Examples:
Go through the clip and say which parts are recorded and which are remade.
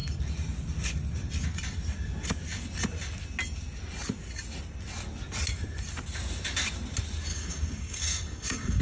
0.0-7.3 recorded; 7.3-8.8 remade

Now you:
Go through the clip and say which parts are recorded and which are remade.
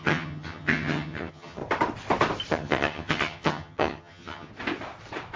0.0-1.6 remade; 1.6-2.5 recorded; 2.5-4.5 remade; 4.5-5.4 recorded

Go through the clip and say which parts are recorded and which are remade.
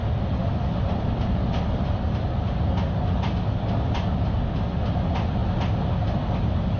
0.0-0.4 recorded; 0.4-2.7 remade; 2.7-6.8 recorded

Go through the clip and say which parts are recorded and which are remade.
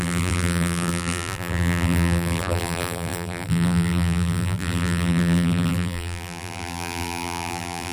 0.0-7.9 remade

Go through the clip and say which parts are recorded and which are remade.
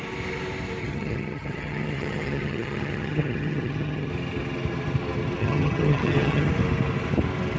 0.0-0.8 recorded; 0.8-4.1 remade; 4.1-5.4 recorded; 5.4-6.5 remade; 6.5-7.6 recorded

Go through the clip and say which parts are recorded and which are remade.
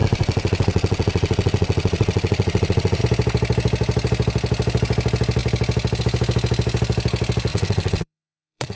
0.0-3.0 remade; 3.0-7.5 recorded; 7.5-8.8 remade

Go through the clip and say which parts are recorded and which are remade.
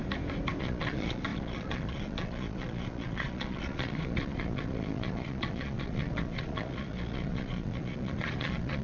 0.0-0.6 recorded; 0.6-8.8 remade